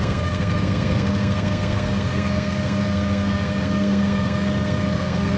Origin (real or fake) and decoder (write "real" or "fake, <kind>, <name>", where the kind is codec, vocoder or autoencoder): fake, codec, SNAC